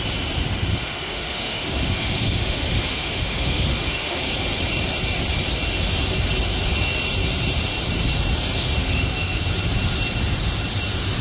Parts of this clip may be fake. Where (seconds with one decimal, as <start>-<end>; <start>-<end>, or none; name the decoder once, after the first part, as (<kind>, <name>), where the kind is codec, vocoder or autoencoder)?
0.7-4.2 (autoencoder, DAC-VAE); 8.8-9.4